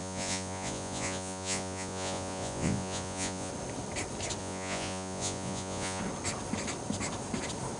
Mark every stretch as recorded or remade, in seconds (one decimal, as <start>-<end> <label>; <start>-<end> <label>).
0.0-3.5 remade; 3.5-4.4 recorded; 4.4-6.0 remade; 6.0-7.8 recorded